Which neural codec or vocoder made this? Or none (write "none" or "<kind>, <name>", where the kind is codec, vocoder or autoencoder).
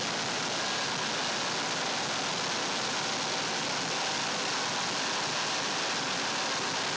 none